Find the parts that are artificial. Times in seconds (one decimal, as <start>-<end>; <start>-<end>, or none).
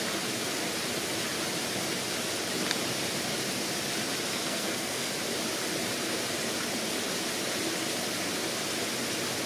4.3-5.1